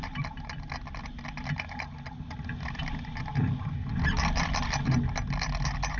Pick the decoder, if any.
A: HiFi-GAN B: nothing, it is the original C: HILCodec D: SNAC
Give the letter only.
B